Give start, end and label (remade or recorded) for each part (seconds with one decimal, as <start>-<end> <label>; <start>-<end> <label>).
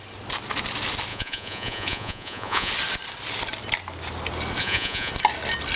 0.0-1.1 recorded; 1.1-2.7 remade; 2.7-4.6 recorded; 4.6-5.1 remade; 5.1-5.8 recorded